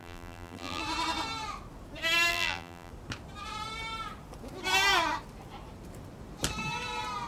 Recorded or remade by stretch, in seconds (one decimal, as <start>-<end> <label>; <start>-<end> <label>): 0.0-0.8 remade; 0.8-2.3 recorded; 2.3-2.9 remade; 2.9-7.3 recorded